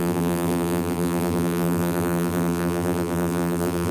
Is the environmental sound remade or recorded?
remade